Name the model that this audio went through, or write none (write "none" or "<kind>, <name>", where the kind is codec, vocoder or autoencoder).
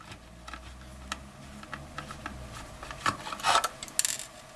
none